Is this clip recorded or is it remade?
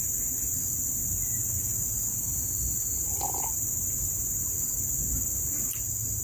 recorded